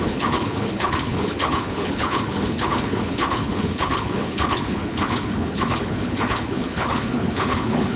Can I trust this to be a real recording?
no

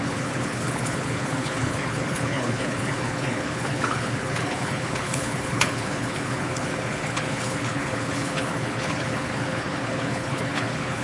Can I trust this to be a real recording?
no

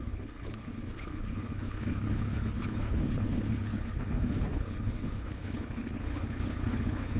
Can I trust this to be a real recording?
no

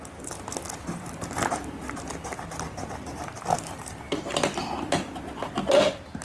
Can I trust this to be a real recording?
yes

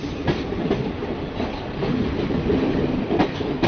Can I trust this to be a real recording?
yes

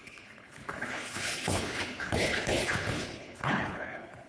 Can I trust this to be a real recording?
no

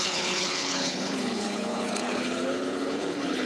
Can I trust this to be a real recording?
no